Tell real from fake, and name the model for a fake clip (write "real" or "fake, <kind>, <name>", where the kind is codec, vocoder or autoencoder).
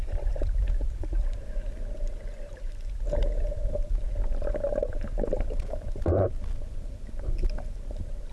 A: fake, vocoder, BigVGAN v2